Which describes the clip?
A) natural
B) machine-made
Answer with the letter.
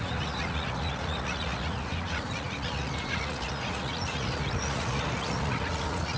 B